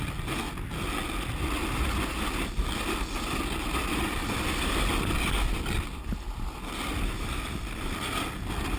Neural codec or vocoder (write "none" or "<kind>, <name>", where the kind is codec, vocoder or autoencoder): none